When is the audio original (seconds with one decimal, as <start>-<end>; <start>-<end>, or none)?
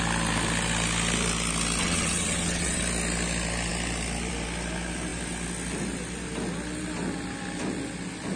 0.0-1.8; 2.8-8.4